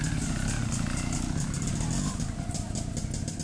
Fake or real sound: real